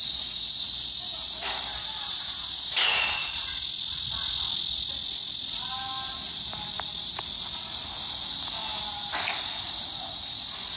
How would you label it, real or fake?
real